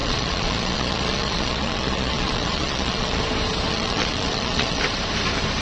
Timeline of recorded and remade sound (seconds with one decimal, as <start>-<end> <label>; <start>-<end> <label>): 0.0-3.2 remade; 3.2-3.7 recorded; 3.7-4.8 remade; 4.8-5.6 recorded